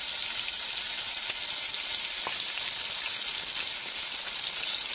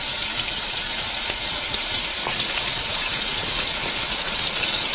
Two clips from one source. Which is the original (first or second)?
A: first